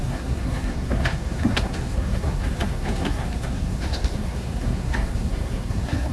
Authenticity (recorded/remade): remade